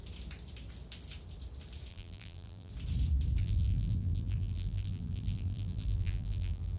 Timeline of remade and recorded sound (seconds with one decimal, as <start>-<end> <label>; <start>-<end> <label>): 0.0-1.9 recorded; 1.9-2.7 remade; 2.7-3.4 recorded; 3.4-6.8 remade